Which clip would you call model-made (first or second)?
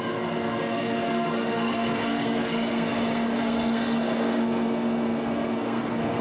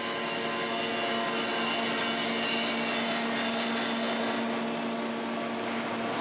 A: first